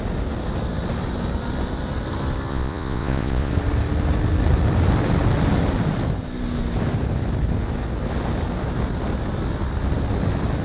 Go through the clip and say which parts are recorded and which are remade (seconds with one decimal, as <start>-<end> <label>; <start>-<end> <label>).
0.0-2.5 recorded; 2.5-3.5 remade; 3.5-10.6 recorded